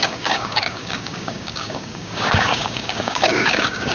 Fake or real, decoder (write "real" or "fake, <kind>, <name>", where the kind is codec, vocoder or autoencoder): fake, codec, DAC